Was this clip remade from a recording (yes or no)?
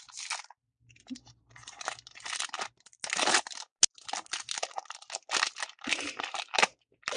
no